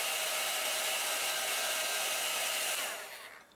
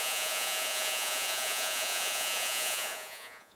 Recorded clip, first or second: first